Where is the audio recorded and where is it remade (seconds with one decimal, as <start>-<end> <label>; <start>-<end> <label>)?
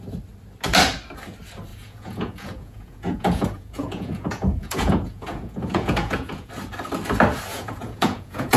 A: 0.0-1.7 recorded; 1.7-6.5 remade; 6.5-7.5 recorded; 7.5-8.6 remade